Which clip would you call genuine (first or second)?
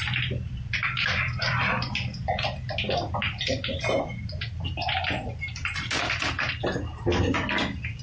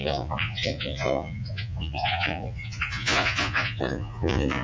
first